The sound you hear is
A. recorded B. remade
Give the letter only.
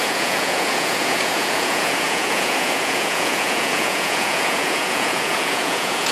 B